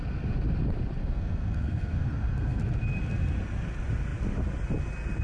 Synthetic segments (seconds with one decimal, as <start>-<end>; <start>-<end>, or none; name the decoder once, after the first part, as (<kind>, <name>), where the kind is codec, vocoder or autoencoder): 1.0-2.6 (codec, SNAC)